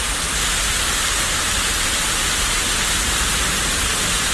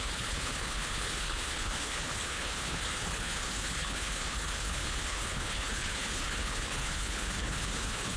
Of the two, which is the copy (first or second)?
second